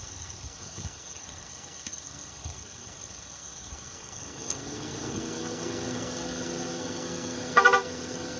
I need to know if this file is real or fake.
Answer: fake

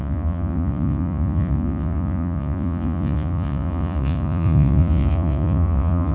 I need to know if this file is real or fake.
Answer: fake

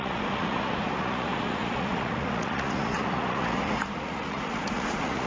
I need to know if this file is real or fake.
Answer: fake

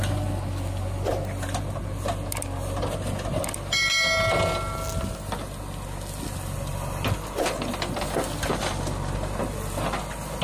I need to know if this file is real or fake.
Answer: real